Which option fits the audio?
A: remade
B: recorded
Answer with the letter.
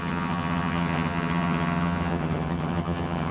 A